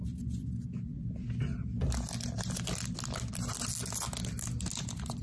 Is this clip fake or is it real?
real